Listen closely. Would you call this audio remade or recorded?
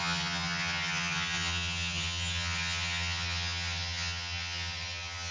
remade